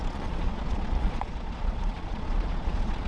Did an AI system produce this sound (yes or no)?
yes